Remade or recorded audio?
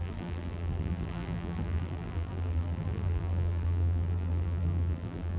remade